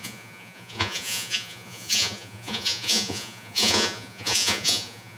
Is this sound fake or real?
fake